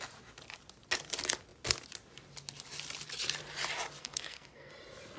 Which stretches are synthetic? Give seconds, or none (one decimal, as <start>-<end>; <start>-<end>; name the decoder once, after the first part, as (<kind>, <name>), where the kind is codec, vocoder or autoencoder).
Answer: 4.0-4.7 (codec, SNAC)